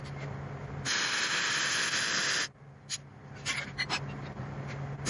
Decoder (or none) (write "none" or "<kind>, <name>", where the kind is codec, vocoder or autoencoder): none